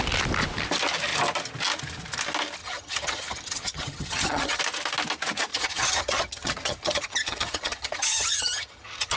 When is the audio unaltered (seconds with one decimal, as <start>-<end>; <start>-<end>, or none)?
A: 0.0-2.6; 4.6-5.5